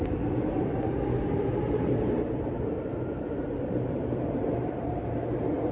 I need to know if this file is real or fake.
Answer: fake